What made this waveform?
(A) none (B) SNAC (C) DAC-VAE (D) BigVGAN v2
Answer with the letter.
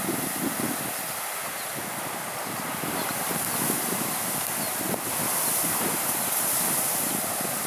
A